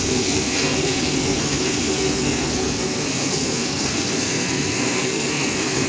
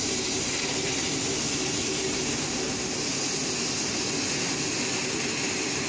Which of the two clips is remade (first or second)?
first